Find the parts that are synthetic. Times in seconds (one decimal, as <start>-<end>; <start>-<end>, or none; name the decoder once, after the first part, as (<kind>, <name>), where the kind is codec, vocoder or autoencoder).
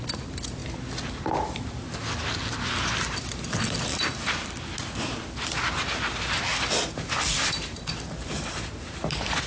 none